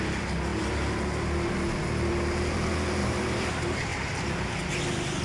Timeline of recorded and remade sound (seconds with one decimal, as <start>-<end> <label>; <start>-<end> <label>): 0.0-3.0 recorded; 3.0-3.5 remade; 3.5-5.2 recorded